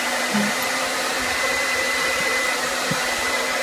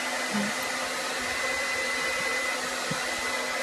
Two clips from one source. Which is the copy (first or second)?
first